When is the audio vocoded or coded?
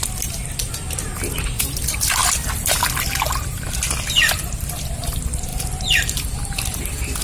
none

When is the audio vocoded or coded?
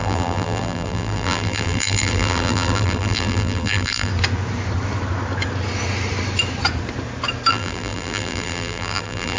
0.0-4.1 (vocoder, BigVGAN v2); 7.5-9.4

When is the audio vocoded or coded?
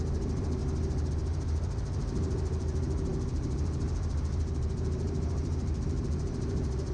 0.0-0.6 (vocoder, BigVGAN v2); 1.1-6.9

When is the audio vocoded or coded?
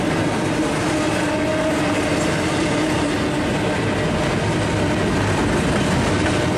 2.1-3.2 (vocoder, BigVGAN v2)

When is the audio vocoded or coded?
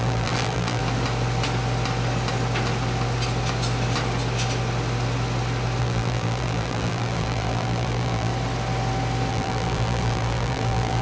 0.0-0.8 (vocoder, BigVGAN v2); 5.8-8.3; 9.3-11.0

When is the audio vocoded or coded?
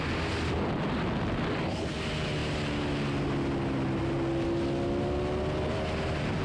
none